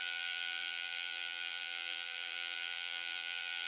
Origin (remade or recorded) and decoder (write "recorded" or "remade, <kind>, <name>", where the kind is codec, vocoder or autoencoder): remade, vocoder, BigVGAN v2